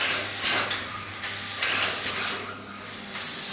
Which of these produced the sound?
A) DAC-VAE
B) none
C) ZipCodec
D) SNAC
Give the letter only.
B